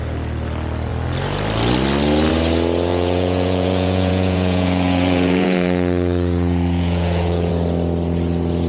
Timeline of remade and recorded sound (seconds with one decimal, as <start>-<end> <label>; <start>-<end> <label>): 0.0-2.9 recorded; 2.9-7.5 remade; 7.5-8.7 recorded